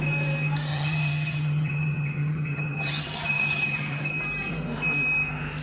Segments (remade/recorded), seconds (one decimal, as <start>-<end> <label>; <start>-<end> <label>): 0.0-0.7 recorded; 0.7-4.1 remade; 4.1-5.6 recorded